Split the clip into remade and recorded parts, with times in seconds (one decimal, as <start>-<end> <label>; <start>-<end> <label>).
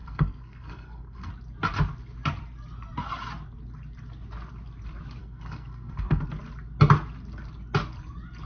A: 0.0-1.3 remade; 1.3-5.2 recorded; 5.2-6.2 remade; 6.2-8.5 recorded